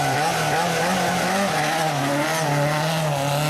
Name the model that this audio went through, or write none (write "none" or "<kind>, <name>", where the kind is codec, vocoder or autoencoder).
none